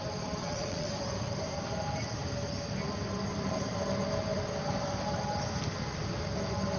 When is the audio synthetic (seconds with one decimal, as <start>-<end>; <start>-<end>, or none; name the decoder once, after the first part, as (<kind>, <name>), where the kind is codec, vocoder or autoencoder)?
0.4-0.9 (vocoder, Vocos)